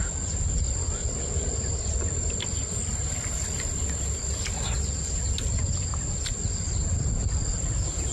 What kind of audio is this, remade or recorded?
recorded